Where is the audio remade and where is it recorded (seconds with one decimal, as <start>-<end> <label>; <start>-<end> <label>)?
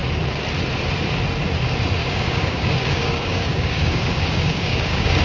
0.0-2.0 recorded; 2.0-5.2 remade